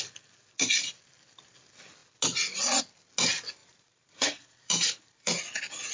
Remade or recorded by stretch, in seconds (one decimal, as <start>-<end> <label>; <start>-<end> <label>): 0.0-3.6 recorded; 3.6-5.4 remade; 5.4-5.9 recorded